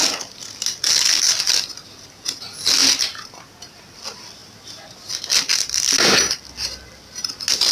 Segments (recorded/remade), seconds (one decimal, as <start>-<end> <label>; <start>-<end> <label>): 0.0-7.7 recorded